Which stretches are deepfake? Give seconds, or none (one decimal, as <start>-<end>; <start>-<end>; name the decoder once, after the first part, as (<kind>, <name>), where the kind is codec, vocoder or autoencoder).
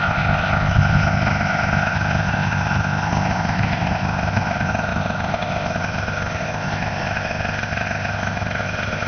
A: 0.0-9.1 (codec, ZipCodec)